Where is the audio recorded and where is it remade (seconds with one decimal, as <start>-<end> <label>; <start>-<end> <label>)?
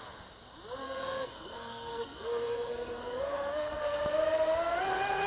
0.0-0.8 recorded; 0.8-4.0 remade; 4.0-5.3 recorded